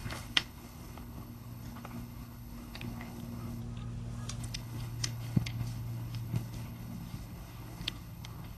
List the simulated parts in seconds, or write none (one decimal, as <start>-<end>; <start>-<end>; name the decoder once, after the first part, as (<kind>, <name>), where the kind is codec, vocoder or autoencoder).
0.0-3.6 (codec, HILCodec); 4.4-8.6